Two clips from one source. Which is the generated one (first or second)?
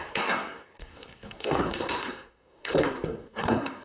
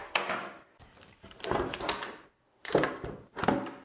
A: first